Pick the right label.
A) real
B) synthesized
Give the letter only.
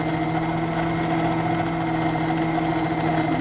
A